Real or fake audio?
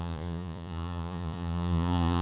fake